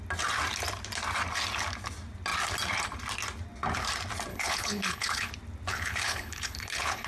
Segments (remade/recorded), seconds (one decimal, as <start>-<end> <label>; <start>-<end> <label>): 0.0-4.3 recorded; 4.3-5.3 remade; 5.3-5.7 recorded; 5.7-7.1 remade